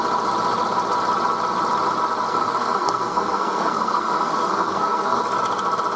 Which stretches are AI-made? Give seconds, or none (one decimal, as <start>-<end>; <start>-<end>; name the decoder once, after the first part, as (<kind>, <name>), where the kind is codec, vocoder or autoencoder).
2.3-5.2 (codec, SNAC)